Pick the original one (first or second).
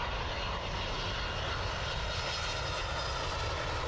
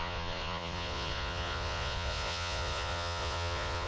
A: first